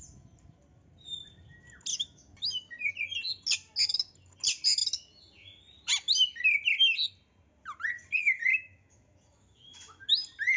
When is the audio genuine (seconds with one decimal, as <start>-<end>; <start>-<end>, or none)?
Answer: 0.0-1.9; 2.9-8.5; 10.1-10.6